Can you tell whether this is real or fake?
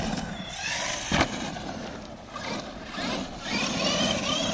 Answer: real